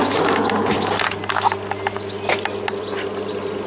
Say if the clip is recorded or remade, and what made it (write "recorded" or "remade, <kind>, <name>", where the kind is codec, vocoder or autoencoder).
recorded